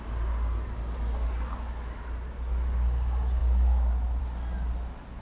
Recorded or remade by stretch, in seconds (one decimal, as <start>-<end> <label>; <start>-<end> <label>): 0.0-5.2 recorded